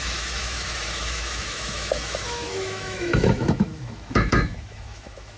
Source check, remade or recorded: remade